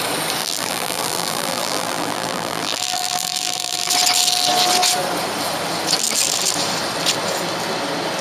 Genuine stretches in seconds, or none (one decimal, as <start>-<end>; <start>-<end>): 0.0-0.4; 3.9-8.2